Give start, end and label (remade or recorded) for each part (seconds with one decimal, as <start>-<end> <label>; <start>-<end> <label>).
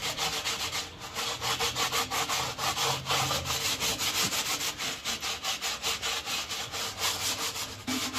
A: 0.0-8.2 recorded